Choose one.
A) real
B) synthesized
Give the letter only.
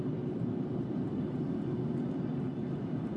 A